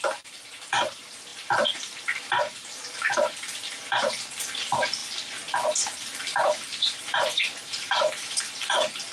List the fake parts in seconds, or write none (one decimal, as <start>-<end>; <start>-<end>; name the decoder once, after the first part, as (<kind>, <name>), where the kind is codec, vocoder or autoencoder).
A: 0.0-5.0 (vocoder, BigVGAN v2); 6.2-9.1